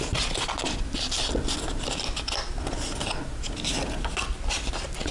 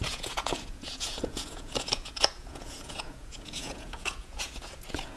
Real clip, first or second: first